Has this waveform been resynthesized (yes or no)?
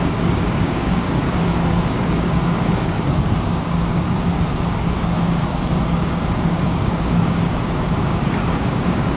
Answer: yes